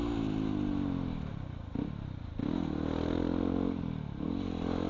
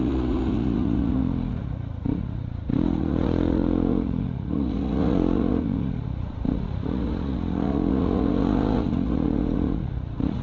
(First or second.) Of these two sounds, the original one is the first